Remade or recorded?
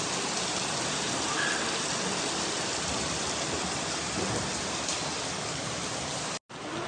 recorded